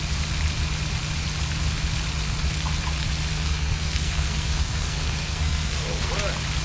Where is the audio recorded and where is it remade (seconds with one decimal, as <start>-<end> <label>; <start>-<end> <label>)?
0.0-3.3 recorded; 3.3-6.1 remade; 6.1-6.6 recorded